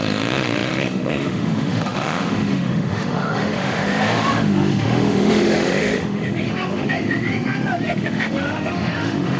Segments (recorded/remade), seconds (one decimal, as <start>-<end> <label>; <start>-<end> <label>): 0.0-9.4 remade